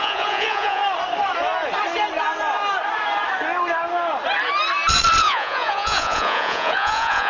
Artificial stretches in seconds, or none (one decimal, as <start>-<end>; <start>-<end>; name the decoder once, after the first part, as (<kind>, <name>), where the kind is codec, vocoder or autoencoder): 0.0-0.8 (vocoder, Vocos); 5.2-7.3